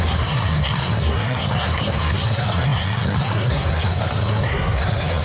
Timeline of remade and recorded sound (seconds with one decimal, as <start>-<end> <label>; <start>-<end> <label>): 0.0-5.2 remade